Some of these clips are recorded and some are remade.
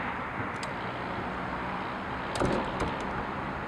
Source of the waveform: recorded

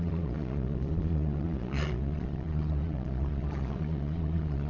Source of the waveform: remade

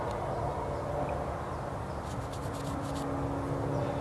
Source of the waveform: recorded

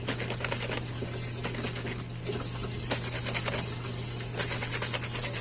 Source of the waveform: recorded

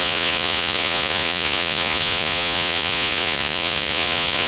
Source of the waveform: remade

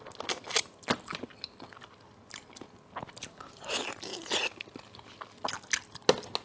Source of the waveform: recorded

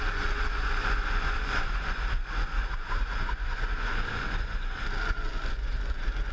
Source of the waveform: remade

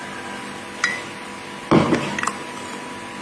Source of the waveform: recorded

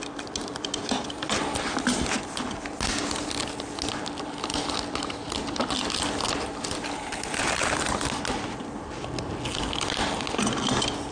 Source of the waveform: recorded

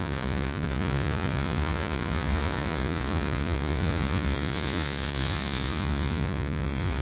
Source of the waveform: remade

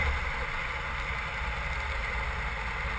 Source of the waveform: recorded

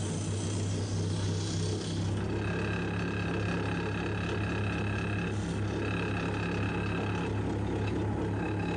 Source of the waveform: recorded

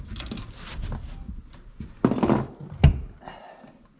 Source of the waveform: recorded